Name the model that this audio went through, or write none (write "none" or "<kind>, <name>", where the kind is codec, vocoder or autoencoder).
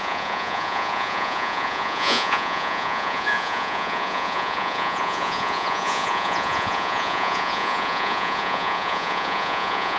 vocoder, Vocos